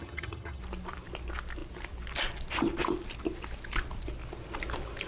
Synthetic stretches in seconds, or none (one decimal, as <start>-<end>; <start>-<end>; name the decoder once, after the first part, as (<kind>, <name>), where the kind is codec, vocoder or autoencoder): 0.0-0.6 (vocoder, HiFi-GAN)